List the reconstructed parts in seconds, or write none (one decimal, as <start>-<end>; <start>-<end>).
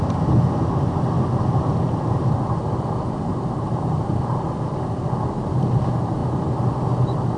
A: 3.3-4.2